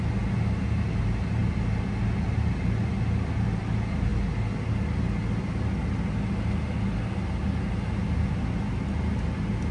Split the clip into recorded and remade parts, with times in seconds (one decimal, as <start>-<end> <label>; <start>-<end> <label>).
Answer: 0.0-9.7 recorded